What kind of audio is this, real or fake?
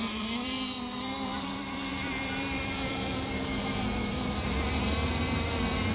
fake